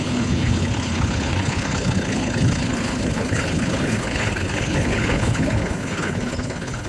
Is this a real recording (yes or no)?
no